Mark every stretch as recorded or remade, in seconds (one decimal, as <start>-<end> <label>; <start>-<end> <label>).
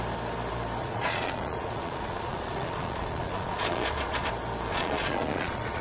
0.0-0.8 recorded; 0.8-4.3 remade; 4.3-4.7 recorded; 4.7-5.8 remade